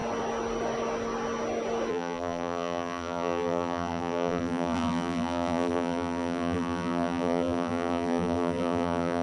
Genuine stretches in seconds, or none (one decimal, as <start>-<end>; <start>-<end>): 0.0-1.9